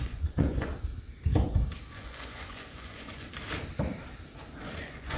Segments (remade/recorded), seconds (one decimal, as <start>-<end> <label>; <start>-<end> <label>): 0.0-0.7 remade; 0.7-1.9 recorded; 1.9-3.3 remade; 3.3-4.8 recorded; 4.8-5.2 remade